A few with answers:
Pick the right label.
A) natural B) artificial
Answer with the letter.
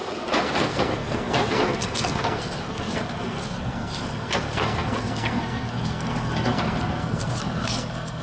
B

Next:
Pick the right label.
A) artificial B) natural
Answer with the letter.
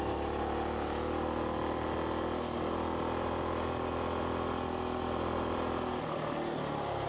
B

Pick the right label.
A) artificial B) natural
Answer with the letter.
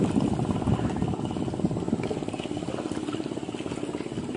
B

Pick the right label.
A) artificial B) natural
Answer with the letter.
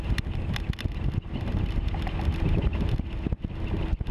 B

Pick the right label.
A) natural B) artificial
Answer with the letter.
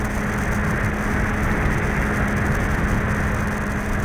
A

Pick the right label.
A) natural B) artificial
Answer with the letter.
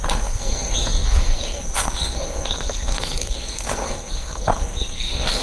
B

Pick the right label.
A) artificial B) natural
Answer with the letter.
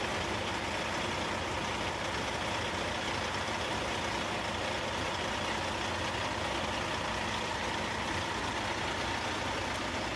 B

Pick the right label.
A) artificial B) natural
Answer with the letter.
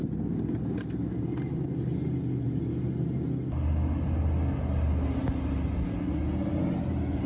B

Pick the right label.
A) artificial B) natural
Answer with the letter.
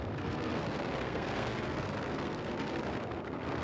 A